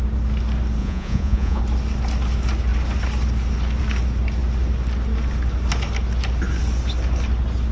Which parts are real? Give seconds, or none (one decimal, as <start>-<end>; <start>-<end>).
0.0-0.8; 1.6-7.7